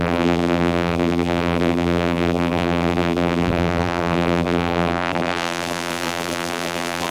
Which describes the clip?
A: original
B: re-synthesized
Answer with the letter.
B